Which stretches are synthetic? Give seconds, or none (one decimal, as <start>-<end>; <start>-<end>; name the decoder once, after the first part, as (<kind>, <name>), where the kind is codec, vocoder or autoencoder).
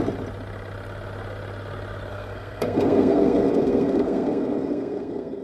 2.1-5.4 (codec, SNAC)